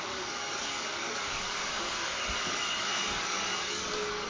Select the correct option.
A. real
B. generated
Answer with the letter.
B